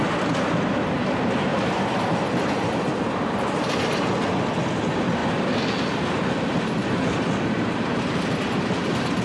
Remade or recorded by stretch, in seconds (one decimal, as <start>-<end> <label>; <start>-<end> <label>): 0.0-1.5 recorded; 1.5-3.3 remade; 3.3-6.8 recorded; 6.8-8.6 remade; 8.6-9.2 recorded